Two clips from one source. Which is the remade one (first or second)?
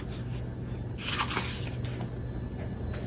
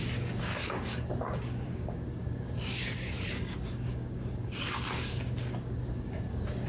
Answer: second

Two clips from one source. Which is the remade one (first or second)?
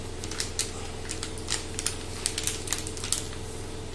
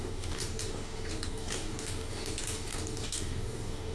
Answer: second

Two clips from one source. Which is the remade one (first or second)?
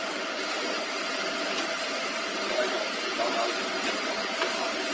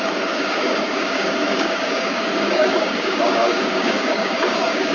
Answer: second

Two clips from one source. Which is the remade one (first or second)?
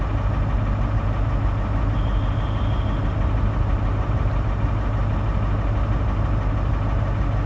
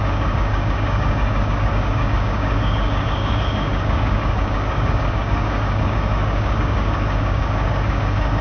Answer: second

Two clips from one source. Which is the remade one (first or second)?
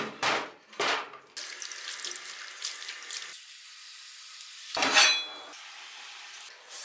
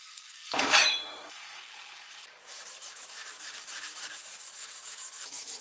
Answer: second